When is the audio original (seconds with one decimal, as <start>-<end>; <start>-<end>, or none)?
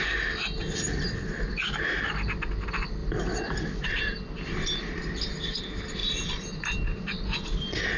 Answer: 0.0-3.0; 5.0-6.0; 6.7-8.0